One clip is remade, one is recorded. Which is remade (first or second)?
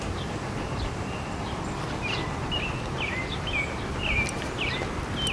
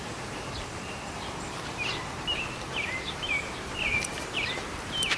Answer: second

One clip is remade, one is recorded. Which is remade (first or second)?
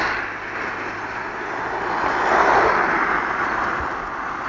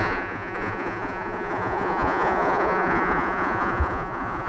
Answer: second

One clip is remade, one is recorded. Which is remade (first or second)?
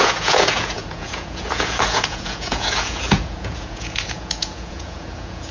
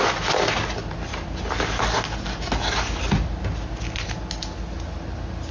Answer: first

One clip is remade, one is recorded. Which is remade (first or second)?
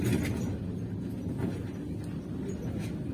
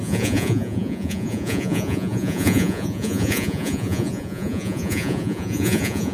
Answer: second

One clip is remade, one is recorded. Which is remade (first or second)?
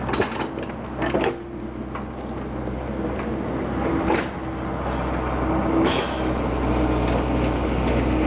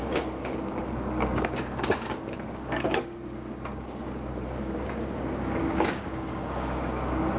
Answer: second